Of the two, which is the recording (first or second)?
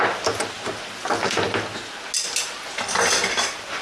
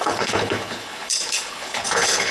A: first